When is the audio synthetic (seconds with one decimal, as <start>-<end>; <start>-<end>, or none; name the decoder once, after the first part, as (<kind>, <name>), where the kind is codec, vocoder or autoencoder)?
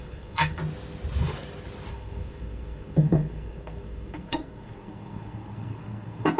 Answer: 0.0-0.6 (codec, SNAC); 1.9-6.4